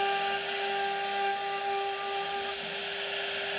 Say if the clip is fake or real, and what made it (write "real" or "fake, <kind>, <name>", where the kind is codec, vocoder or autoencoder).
real